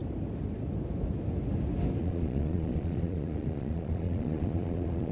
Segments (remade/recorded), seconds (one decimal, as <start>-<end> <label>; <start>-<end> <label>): 0.0-2.0 recorded; 2.0-5.1 remade